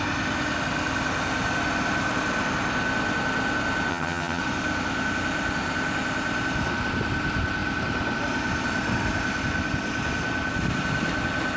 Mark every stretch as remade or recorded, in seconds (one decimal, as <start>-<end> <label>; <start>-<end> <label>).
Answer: 0.0-3.9 recorded; 3.9-4.4 remade; 4.4-11.6 recorded